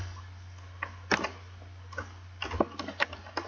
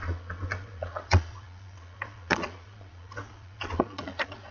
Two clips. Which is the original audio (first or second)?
first